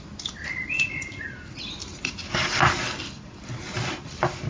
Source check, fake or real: real